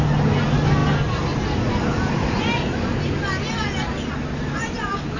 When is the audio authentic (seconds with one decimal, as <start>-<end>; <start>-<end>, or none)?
0.0-5.2